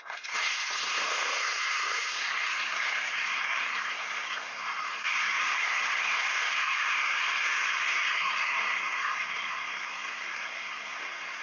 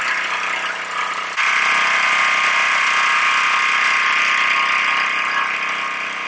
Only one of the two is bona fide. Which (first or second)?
second